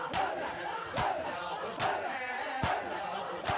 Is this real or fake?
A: real